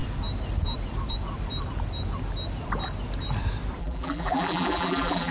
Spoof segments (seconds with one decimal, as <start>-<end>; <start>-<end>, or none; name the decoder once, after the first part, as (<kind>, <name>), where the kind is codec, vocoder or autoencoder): 3.8-5.3 (vocoder, BigVGAN v2)